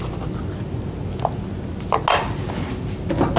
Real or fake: real